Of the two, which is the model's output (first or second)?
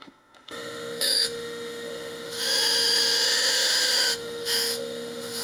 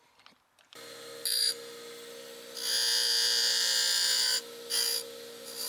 first